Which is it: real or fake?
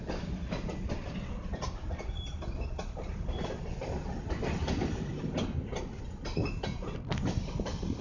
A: real